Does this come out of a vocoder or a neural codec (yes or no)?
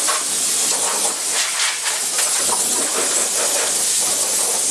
no